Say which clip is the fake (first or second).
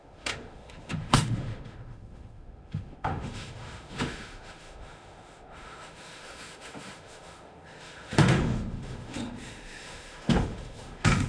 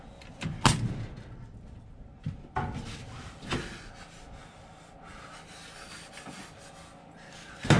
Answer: first